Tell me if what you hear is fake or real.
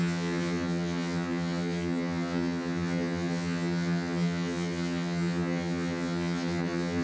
fake